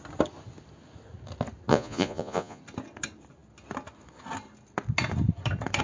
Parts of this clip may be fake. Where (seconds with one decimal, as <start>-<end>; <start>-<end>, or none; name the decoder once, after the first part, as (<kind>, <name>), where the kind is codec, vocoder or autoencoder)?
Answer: 1.7-2.6 (vocoder, Vocos)